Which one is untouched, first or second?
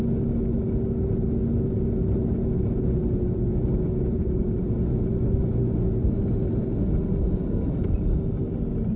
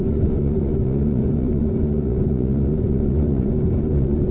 first